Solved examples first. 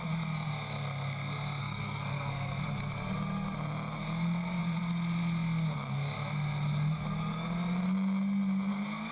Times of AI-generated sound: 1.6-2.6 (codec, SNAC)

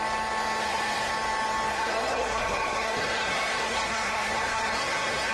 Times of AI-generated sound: 0.6-1.1 (codec, SNAC); 1.7-5.3

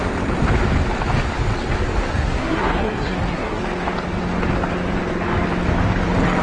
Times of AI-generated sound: 2.1-3.6 (codec, SNAC)

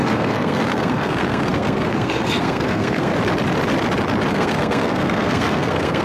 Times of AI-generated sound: 0.0-3.1 (codec, SNAC); 4.3-6.0

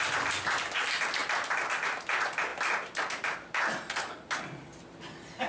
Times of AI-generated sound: none